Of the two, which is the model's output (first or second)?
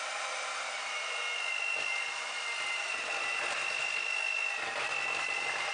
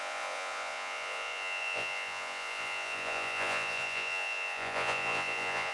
second